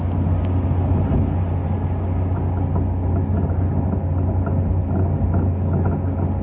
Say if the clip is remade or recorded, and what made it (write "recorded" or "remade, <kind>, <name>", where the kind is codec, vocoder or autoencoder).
recorded